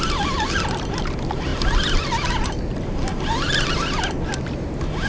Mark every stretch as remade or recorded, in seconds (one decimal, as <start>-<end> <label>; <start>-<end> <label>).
0.0-5.1 recorded

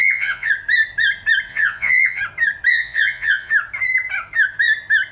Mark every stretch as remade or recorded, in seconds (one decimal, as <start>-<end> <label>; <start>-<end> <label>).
0.0-0.5 remade; 0.5-1.5 recorded; 1.5-2.2 remade; 2.2-2.7 recorded; 2.7-3.5 remade; 3.5-5.1 recorded

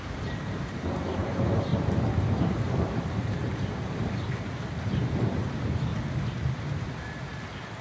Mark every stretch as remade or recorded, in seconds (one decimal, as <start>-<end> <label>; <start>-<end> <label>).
0.0-1.7 remade; 1.7-2.4 recorded; 2.4-5.9 remade; 5.9-7.8 recorded

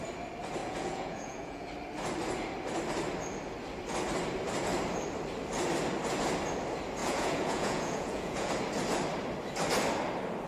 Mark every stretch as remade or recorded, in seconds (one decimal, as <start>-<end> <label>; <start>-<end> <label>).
0.0-0.6 recorded; 0.6-1.7 remade; 1.7-7.0 recorded; 7.0-8.5 remade; 8.5-10.5 recorded

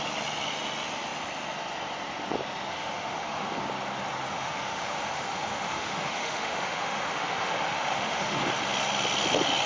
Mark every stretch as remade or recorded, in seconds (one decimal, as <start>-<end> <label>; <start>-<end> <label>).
0.0-2.7 recorded; 2.7-3.6 remade; 3.6-4.3 recorded; 4.3-8.4 remade; 8.4-9.7 recorded

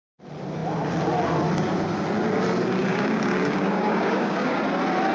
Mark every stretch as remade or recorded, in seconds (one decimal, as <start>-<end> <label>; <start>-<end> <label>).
0.0-2.9 recorded; 2.9-4.6 remade; 4.6-5.1 recorded

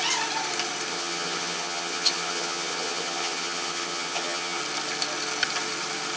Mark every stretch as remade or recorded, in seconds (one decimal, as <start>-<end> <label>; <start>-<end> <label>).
0.0-0.9 recorded; 0.9-4.6 remade; 4.6-6.2 recorded

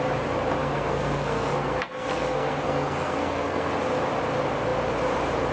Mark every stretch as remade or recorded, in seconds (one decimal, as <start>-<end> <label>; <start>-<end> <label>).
0.0-0.6 recorded; 0.6-3.7 remade; 3.7-5.5 recorded